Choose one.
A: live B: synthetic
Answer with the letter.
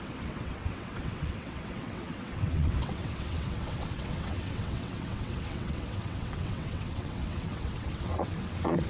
B